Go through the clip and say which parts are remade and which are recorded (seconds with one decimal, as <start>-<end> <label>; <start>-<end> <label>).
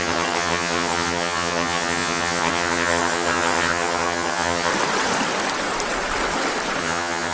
0.0-4.7 remade; 4.7-6.8 recorded; 6.8-7.3 remade